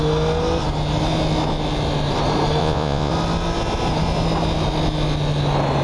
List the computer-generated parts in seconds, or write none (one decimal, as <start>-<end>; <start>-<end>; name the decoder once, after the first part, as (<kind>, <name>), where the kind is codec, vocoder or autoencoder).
2.6-3.1 (vocoder, Vocos)